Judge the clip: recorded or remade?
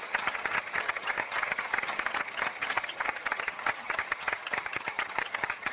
remade